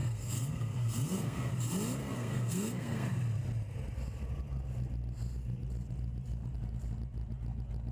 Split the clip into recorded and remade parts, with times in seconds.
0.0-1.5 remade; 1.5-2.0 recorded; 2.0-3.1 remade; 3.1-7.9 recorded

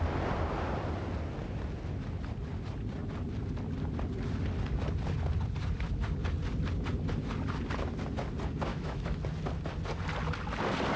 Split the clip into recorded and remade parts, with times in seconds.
0.0-8.7 recorded; 8.7-9.2 remade; 9.2-11.0 recorded

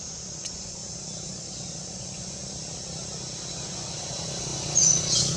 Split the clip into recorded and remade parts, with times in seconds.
0.0-0.8 remade; 0.8-1.3 recorded; 1.3-2.4 remade; 2.4-3.5 recorded; 3.5-5.4 remade

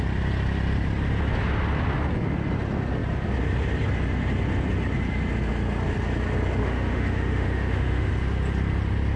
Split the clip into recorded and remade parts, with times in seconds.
0.0-6.6 recorded; 6.6-8.1 remade; 8.1-9.2 recorded

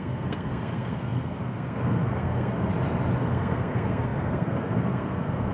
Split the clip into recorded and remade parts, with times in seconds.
0.0-2.7 remade; 2.7-3.2 recorded; 3.2-5.5 remade

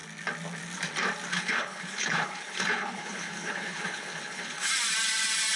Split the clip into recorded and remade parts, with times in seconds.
0.0-1.3 recorded; 1.3-4.7 remade; 4.7-5.6 recorded

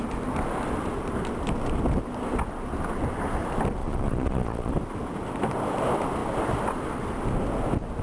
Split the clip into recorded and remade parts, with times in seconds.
0.0-3.8 recorded; 3.8-4.7 remade; 4.7-8.0 recorded

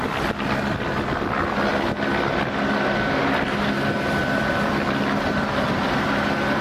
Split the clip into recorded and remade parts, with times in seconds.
0.0-6.6 recorded